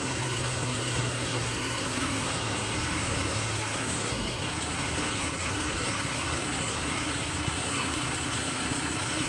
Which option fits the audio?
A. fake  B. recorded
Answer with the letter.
A